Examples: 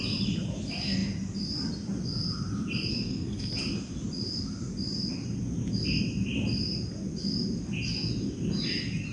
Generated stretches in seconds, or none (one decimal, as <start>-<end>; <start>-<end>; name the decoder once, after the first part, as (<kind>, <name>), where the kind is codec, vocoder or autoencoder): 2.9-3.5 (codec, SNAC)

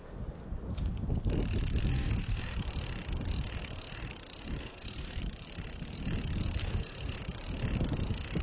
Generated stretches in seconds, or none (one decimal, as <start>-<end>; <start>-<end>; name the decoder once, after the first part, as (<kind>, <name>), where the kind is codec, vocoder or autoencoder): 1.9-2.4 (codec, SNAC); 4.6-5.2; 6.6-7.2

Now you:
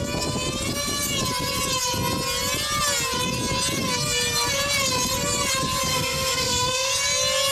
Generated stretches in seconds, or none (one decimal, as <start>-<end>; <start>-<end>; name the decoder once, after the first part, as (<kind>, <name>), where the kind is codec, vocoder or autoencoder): 5.9-6.9 (codec, SNAC)